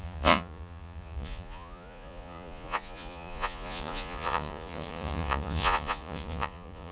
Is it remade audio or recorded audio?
remade